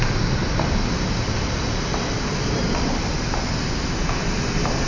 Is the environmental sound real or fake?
real